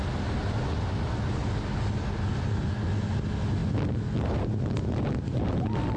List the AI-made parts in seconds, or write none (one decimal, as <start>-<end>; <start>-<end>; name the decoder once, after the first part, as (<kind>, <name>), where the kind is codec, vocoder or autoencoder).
none